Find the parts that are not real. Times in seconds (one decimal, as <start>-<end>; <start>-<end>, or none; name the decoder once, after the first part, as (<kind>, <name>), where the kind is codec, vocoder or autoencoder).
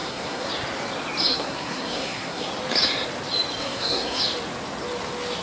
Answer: 0.0-0.5 (codec, SNAC); 1.3-2.5; 3.6-4.2